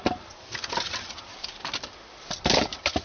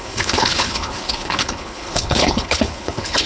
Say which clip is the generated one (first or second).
second